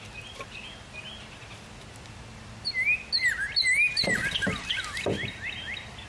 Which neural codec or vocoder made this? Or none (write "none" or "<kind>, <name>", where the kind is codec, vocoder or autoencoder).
none